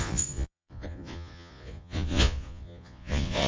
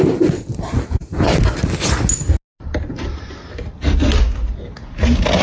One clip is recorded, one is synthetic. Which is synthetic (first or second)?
first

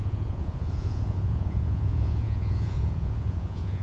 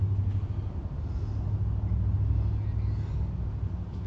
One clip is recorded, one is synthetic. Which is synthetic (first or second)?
first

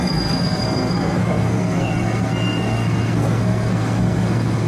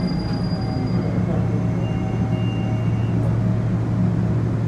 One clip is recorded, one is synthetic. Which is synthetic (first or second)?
first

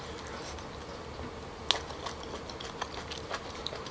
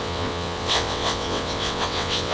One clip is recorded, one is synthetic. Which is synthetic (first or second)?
second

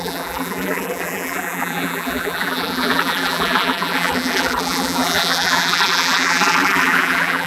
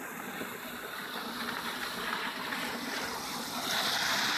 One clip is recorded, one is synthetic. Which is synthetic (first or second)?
first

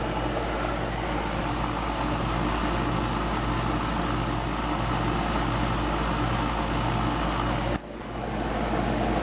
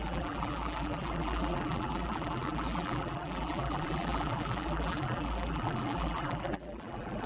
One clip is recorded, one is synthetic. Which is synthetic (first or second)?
second